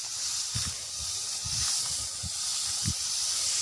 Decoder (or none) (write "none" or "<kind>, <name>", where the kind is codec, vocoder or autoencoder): none